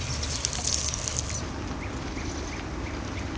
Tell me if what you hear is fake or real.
real